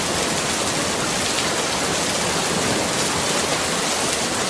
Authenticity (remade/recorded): recorded